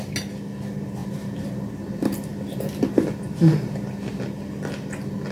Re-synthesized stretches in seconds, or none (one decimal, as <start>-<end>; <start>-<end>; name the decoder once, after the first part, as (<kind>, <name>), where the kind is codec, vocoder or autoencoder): none